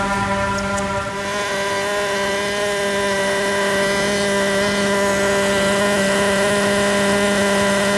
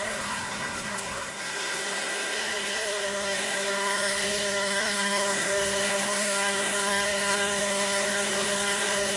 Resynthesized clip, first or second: second